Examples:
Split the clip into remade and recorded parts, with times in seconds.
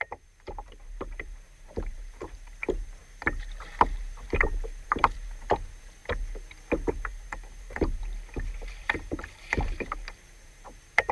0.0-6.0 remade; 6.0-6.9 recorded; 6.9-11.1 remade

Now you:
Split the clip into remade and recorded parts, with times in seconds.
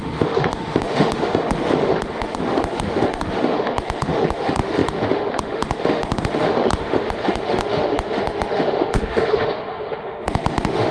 0.0-10.9 remade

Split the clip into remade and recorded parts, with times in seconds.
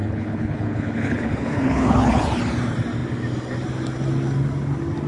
0.0-2.2 remade; 2.2-5.1 recorded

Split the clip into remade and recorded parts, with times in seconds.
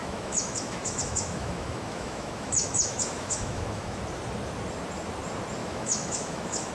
0.0-4.0 remade; 4.0-5.6 recorded; 5.6-6.7 remade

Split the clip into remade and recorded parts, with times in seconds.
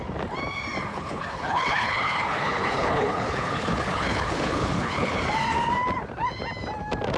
0.0-0.9 recorded; 0.9-5.2 remade; 5.2-7.2 recorded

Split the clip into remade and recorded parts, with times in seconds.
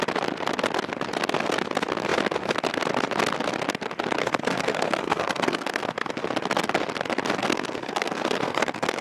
0.0-4.2 recorded; 4.2-6.2 remade; 6.2-7.4 recorded; 7.4-9.0 remade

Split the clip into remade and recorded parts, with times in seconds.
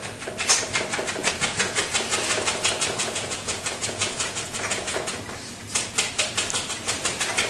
0.0-1.2 recorded; 1.2-1.8 remade; 1.8-3.0 recorded; 3.0-5.1 remade; 5.1-7.5 recorded